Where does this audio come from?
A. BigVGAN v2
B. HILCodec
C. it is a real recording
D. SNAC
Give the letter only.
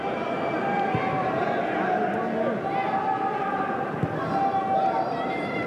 C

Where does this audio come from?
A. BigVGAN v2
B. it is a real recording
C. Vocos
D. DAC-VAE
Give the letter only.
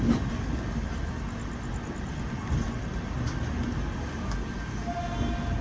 B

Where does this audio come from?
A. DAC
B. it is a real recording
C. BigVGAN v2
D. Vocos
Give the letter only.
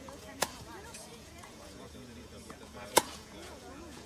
D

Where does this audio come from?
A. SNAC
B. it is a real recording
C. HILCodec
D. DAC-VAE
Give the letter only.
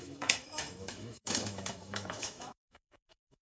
D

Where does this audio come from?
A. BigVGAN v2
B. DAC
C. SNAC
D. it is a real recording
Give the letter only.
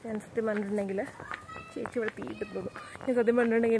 D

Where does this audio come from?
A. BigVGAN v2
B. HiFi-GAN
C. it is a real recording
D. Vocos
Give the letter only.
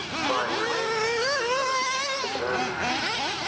C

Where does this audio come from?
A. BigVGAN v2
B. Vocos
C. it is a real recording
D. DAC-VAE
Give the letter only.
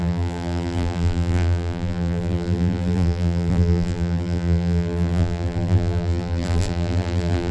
A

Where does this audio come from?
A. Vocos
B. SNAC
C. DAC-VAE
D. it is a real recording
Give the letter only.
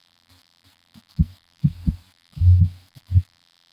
B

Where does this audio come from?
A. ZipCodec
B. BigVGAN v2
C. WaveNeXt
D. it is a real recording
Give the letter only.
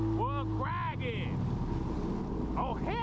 D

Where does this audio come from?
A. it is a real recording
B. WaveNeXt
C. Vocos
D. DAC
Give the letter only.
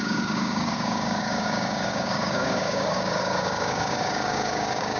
D